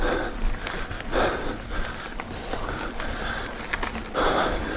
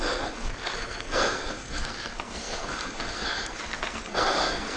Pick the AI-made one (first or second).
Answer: second